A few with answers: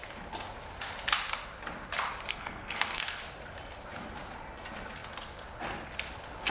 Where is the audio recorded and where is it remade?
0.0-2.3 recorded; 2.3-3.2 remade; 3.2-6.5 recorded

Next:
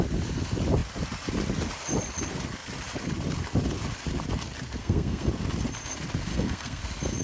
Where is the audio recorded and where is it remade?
0.0-4.8 recorded; 4.8-5.3 remade; 5.3-6.3 recorded; 6.3-6.8 remade; 6.8-7.2 recorded

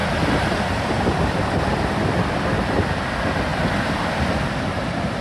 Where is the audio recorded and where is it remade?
0.0-5.2 recorded

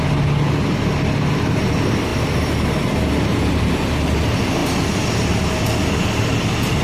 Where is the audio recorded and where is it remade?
0.0-6.8 recorded

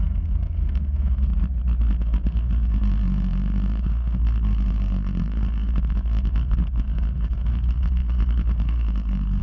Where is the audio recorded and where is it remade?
0.0-1.3 remade; 1.3-1.9 recorded; 1.9-9.4 remade

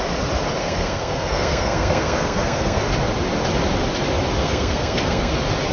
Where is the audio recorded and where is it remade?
0.0-0.6 recorded; 0.6-2.8 remade; 2.8-4.4 recorded; 4.4-5.3 remade; 5.3-5.7 recorded